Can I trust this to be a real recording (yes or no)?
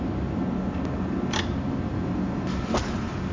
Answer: yes